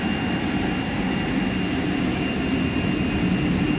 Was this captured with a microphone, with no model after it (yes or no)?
yes